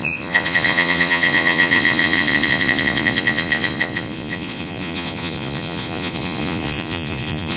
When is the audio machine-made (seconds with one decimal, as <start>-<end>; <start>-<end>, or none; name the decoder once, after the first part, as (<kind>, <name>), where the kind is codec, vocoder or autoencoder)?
0.0-7.6 (vocoder, Vocos)